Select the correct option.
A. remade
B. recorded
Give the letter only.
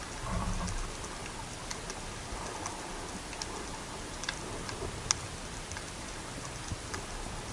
B